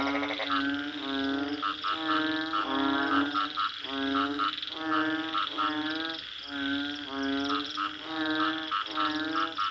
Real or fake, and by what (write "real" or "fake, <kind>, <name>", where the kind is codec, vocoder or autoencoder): real